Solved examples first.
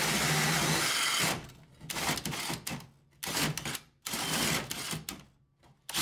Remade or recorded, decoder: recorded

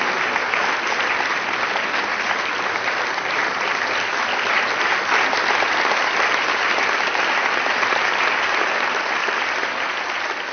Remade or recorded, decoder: recorded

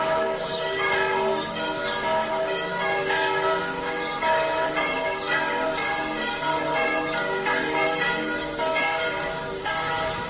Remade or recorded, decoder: remade, codec, DAC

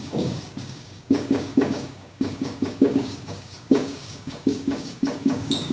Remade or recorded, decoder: remade, codec, DAC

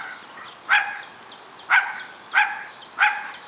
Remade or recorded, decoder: recorded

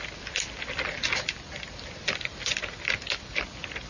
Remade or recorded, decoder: recorded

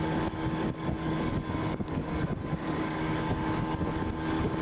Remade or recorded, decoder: remade, codec, DAC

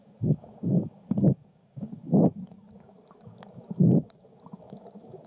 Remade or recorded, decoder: remade, codec, DAC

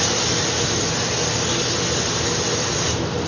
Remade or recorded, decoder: recorded